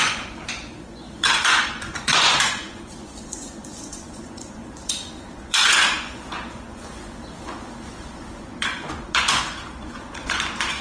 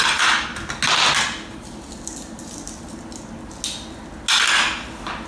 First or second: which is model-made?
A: first